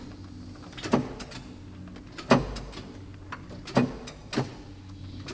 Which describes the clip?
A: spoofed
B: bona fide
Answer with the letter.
B